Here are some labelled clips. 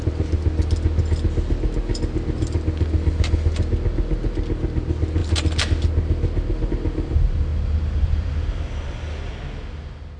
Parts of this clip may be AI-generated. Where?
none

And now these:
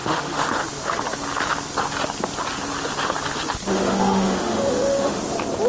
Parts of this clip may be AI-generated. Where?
0.0-0.5; 3.7-5.2

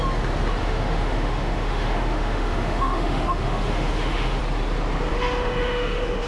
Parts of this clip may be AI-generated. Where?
0.6-4.4; 5.1-6.3

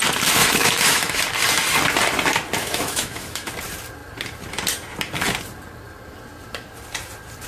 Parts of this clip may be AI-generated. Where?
0.4-1.2; 2.6-3.5

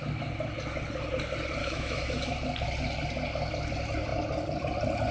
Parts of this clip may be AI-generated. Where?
1.6-2.3

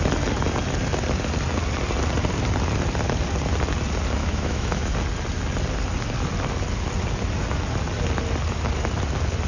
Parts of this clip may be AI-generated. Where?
4.2-4.9

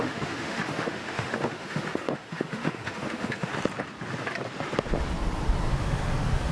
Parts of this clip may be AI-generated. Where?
0.0-3.5; 5.7-6.5